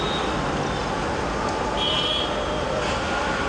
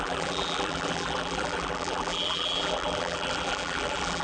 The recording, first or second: first